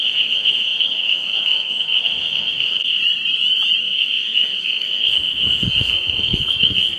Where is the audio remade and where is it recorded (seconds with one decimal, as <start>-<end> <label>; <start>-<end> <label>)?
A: 0.0-3.0 remade; 3.0-3.8 recorded; 3.8-7.0 remade